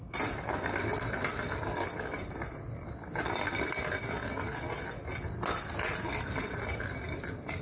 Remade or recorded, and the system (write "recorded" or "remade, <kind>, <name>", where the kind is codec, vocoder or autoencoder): recorded